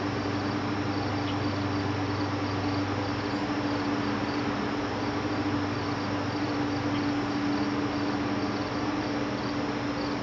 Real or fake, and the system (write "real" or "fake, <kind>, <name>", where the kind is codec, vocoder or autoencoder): real